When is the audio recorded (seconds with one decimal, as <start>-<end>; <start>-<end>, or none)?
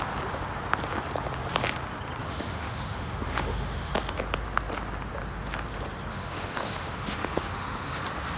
0.0-2.2; 3.9-6.1; 8.0-8.4